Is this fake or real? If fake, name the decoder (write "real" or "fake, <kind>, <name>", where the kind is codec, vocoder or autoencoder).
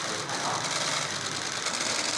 real